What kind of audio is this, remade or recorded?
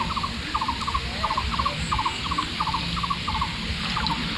recorded